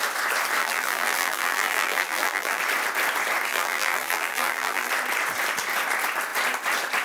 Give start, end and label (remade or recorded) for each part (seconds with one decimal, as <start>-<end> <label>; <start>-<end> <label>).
0.0-0.6 recorded; 0.6-2.6 remade; 2.6-3.5 recorded; 3.5-4.9 remade; 4.9-7.0 recorded